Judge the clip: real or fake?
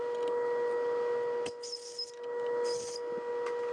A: real